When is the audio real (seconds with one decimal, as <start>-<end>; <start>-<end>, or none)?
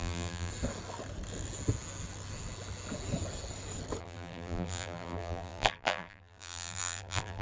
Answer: 0.5-4.0